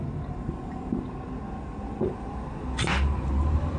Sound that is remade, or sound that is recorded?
recorded